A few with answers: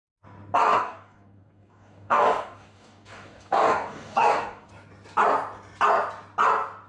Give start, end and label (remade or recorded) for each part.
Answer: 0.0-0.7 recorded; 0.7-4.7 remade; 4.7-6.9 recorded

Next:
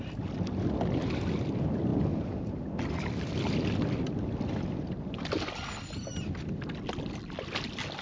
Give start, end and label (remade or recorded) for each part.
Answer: 0.0-8.0 recorded

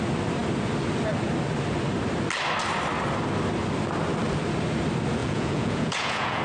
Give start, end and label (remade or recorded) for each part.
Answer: 0.0-5.2 recorded; 5.2-6.4 remade

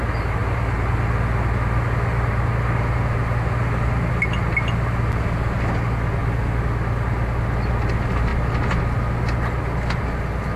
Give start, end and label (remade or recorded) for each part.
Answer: 0.0-10.6 recorded

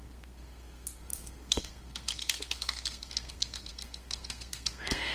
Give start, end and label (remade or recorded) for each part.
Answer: 0.0-5.1 remade